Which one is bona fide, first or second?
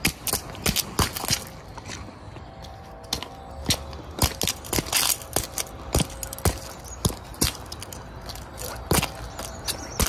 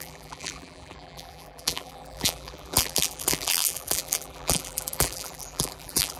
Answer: first